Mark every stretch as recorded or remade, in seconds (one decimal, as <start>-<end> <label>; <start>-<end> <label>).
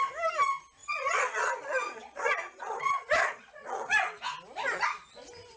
0.0-0.8 recorded; 0.8-4.2 remade; 4.2-5.6 recorded